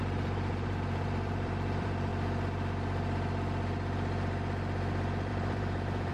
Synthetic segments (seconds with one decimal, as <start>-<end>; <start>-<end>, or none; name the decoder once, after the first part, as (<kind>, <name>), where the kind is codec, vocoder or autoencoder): 0.0-2.1 (vocoder, BigVGAN v2); 5.3-6.1